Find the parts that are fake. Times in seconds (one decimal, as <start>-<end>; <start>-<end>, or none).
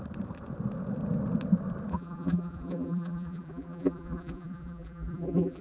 1.9-5.6